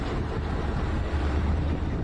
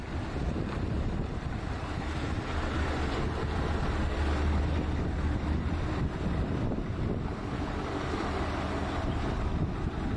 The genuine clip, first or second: second